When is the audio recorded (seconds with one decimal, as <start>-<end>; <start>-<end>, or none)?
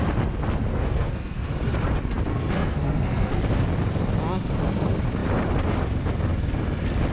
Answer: 0.0-0.7; 1.5-2.3; 3.4-7.1